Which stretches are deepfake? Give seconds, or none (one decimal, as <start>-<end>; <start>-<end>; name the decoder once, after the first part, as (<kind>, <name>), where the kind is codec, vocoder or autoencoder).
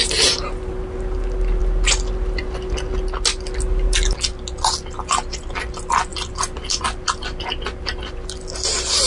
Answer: 6.1-6.8 (vocoder, BigVGAN v2)